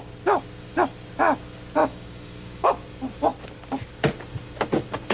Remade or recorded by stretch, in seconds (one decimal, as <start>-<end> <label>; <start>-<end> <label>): 0.0-1.8 recorded; 1.8-2.7 remade; 2.7-5.1 recorded